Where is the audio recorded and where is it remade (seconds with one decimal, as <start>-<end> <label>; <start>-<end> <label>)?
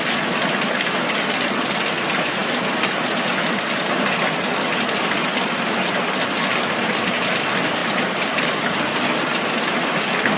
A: 0.0-7.8 recorded; 7.8-8.4 remade; 8.4-10.4 recorded